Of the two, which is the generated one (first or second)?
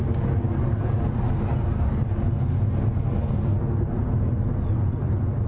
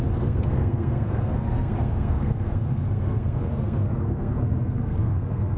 second